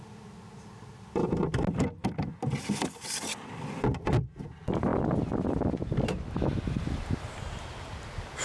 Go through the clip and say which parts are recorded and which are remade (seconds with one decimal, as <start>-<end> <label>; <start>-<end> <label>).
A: 0.0-8.4 recorded